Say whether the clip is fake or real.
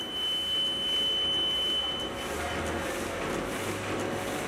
real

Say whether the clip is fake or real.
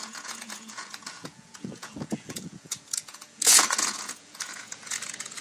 fake